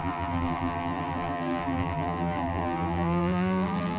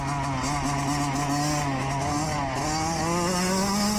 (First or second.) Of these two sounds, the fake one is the first